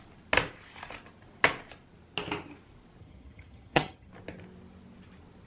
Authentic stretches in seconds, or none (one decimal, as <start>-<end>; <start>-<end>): 0.0-3.0; 4.1-5.5